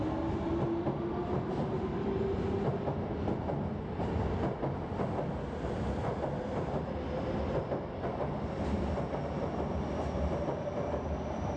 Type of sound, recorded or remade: recorded